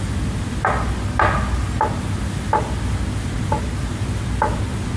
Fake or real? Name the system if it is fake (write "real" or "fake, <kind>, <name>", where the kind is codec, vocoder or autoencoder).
real